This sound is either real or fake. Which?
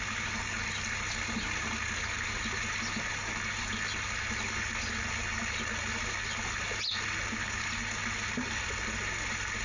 real